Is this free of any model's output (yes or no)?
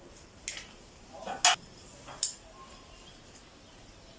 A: yes